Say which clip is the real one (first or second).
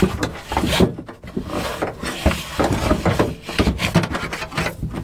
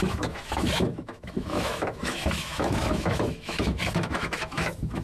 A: first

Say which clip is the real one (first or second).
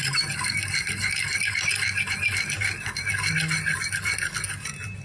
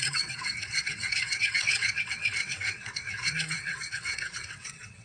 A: first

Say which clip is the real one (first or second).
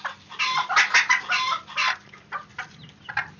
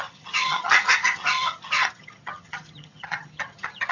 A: first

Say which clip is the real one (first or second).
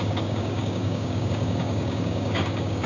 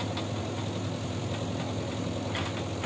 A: second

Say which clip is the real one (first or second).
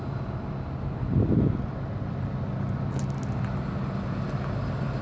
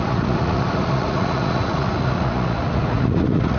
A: first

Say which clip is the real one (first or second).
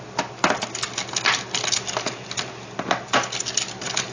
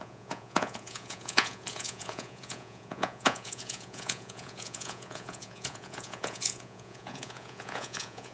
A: first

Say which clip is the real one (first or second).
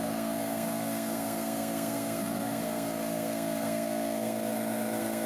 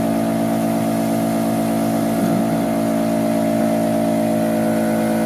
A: second